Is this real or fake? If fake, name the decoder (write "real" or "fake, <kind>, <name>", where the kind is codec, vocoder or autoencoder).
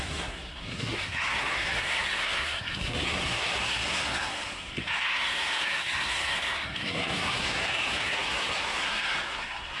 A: fake, codec, SNAC